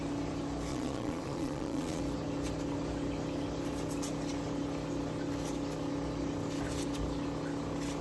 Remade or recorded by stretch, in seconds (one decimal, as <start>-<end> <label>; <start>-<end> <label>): 0.0-0.7 recorded; 0.7-2.0 remade; 2.0-8.0 recorded